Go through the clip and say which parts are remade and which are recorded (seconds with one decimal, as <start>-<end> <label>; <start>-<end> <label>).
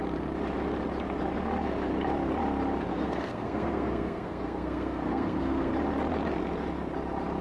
0.0-2.9 recorded; 2.9-5.7 remade; 5.7-7.4 recorded